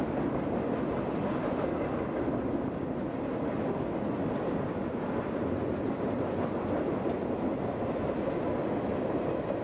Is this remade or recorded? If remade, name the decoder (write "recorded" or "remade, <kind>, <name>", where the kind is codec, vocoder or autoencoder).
recorded